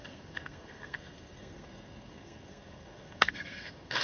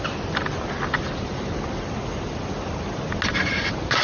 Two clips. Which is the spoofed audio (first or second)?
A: first